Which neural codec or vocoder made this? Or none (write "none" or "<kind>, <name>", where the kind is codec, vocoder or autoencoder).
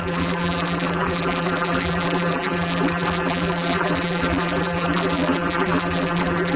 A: vocoder, BigVGAN v2